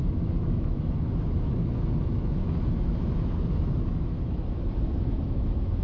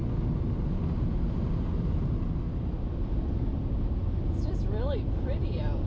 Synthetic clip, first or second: first